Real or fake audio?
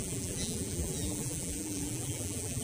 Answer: fake